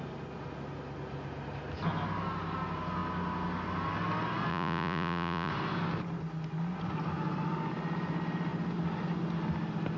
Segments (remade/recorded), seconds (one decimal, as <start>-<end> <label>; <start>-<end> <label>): 0.0-4.5 recorded; 4.5-5.5 remade; 5.5-10.0 recorded